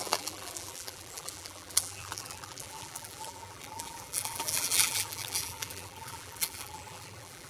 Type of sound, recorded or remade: remade